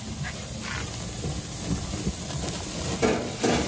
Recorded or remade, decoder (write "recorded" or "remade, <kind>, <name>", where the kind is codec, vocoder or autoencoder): recorded